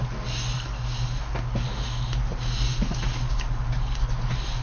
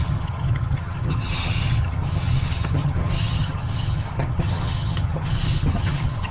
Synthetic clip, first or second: second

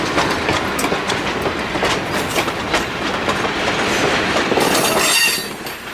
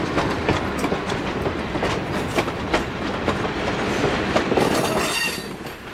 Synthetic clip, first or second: second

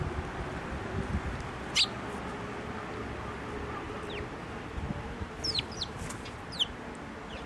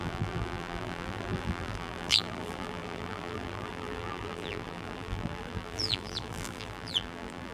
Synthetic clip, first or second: second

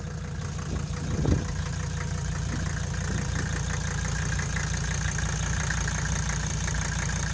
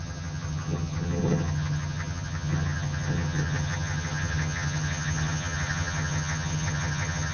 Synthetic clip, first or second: second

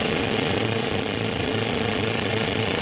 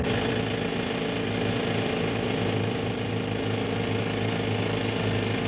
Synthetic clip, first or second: first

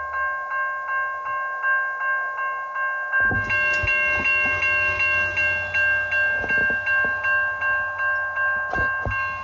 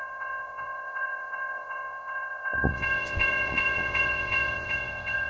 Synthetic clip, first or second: second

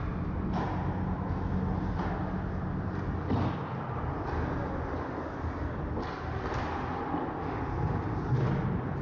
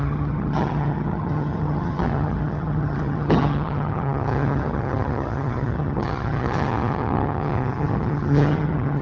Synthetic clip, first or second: second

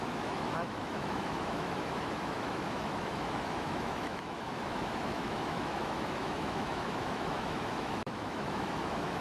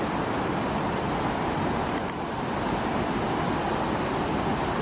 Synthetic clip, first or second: first